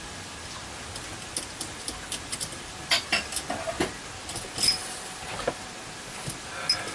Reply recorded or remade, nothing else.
recorded